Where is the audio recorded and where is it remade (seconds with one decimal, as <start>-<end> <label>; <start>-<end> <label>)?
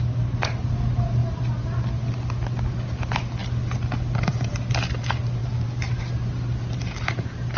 0.0-5.4 recorded; 5.4-6.0 remade; 6.0-7.6 recorded